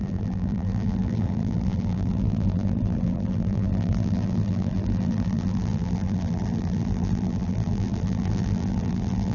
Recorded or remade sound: remade